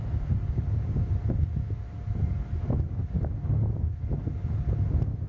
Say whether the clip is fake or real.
real